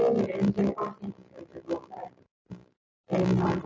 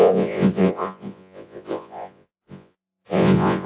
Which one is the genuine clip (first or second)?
first